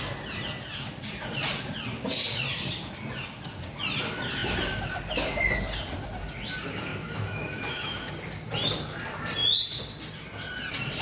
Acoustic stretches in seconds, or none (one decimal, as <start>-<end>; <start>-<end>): 0.0-6.9; 8.1-11.0